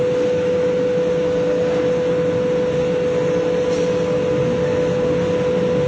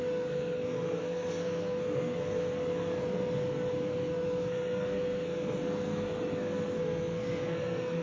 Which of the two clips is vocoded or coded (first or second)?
second